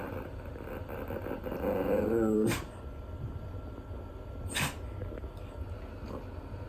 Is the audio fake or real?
fake